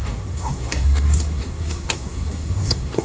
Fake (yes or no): yes